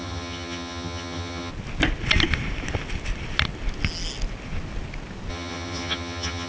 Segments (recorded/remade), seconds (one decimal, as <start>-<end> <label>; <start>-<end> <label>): 0.0-1.5 remade; 1.5-5.3 recorded; 5.3-6.5 remade